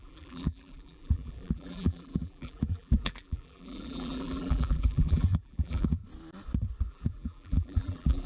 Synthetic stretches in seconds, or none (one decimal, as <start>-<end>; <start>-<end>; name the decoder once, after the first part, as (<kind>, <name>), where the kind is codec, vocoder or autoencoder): 0.0-6.0 (vocoder, BigVGAN v2); 6.9-8.3